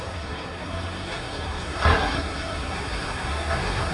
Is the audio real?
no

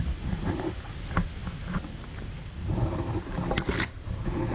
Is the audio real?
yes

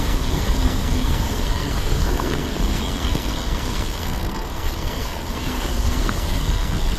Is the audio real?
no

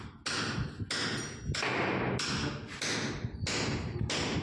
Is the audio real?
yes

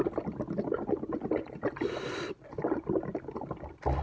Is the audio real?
yes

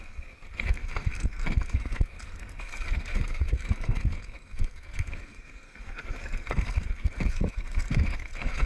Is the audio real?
no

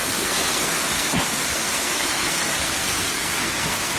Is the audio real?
no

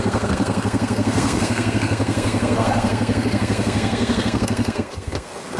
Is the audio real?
no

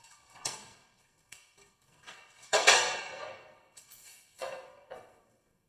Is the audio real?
no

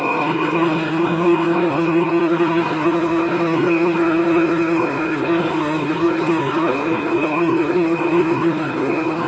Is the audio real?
no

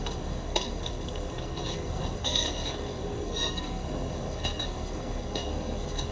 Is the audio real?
no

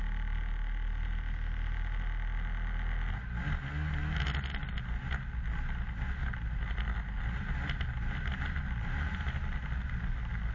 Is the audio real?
yes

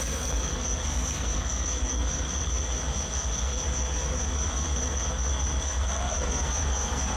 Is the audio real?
no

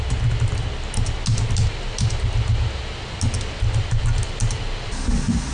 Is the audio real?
yes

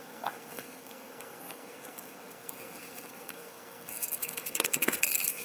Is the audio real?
no